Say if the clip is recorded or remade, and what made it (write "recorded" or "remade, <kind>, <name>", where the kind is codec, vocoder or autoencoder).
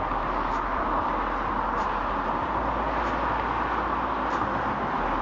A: recorded